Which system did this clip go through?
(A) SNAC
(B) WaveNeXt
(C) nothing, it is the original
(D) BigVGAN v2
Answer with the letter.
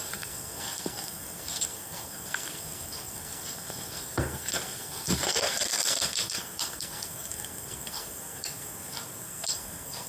A